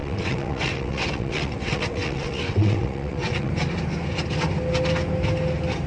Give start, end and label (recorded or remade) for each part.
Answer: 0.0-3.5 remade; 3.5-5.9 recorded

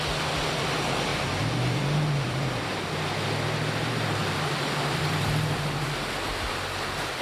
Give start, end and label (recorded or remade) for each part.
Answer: 0.0-1.1 recorded; 1.1-2.7 remade; 2.7-7.2 recorded

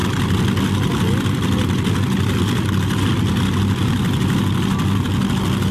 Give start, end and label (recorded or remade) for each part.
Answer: 0.0-5.7 recorded